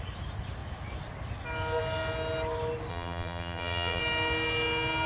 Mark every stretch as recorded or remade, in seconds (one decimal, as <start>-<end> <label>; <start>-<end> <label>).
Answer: 0.0-2.9 recorded; 2.9-4.0 remade; 4.0-5.1 recorded